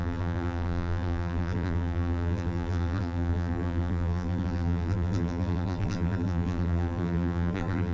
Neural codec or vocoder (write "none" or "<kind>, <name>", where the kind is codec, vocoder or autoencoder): vocoder, BigVGAN v2